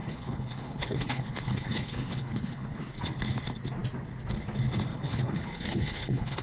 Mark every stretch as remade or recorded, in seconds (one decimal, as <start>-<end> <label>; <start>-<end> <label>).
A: 0.0-2.8 remade; 2.8-4.9 recorded; 4.9-6.4 remade